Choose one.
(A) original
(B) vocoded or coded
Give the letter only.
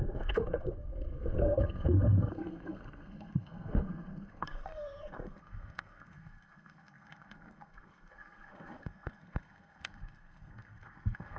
B